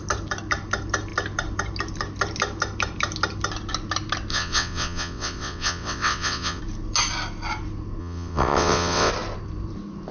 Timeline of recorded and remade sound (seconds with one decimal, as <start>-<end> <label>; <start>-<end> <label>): 0.0-4.3 recorded; 4.3-6.6 remade; 6.6-8.0 recorded; 8.0-9.1 remade; 9.1-10.1 recorded